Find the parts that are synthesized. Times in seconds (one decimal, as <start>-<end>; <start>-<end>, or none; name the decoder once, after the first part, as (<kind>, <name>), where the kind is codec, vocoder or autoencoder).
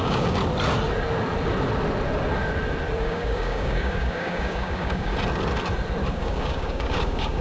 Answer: 0.0-0.4 (codec, DAC); 3.0-5.1; 6.1-7.4